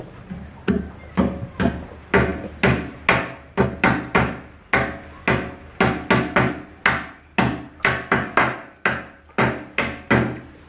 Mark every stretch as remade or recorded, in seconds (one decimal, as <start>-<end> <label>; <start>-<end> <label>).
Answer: 0.0-10.7 recorded